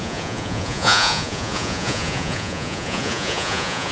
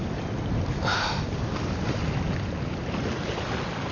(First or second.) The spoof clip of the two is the first